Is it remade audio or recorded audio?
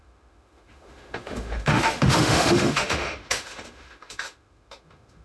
remade